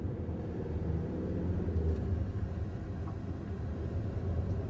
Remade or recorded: recorded